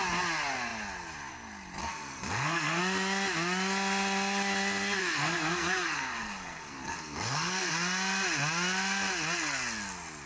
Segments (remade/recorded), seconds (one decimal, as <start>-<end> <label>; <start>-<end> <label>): 0.0-1.8 recorded; 1.8-2.8 remade; 2.8-5.0 recorded; 5.0-7.7 remade; 7.7-10.3 recorded